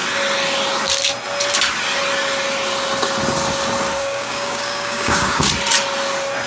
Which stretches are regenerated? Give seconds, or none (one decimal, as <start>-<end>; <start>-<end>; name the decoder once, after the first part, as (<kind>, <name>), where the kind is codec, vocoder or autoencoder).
4.0-5.5 (codec, DAC)